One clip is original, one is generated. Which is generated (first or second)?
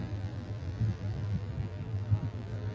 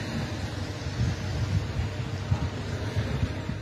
first